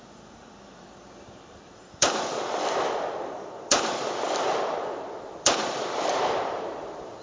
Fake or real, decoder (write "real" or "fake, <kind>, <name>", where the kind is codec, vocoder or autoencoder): fake, vocoder, BigVGAN v2